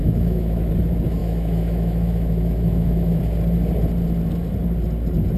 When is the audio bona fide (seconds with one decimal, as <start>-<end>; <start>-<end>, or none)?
0.7-1.2; 3.2-5.4